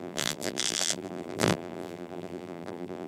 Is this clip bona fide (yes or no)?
no